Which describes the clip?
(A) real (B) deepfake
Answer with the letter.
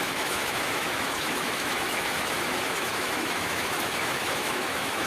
B